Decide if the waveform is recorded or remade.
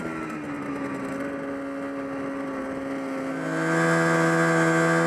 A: recorded